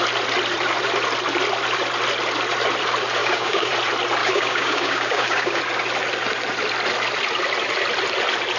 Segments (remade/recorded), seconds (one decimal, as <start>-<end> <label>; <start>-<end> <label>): 0.0-3.2 recorded; 3.2-3.7 remade; 3.7-4.2 recorded; 4.2-5.6 remade; 5.6-8.6 recorded